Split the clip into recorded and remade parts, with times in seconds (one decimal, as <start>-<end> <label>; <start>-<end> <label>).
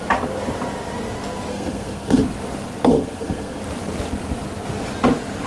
0.0-1.5 recorded; 1.5-2.2 remade; 2.2-2.9 recorded; 2.9-3.6 remade; 3.6-5.5 recorded